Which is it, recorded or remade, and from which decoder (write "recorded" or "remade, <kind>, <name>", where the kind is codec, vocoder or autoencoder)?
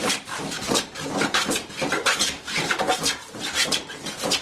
remade, vocoder, BigVGAN v2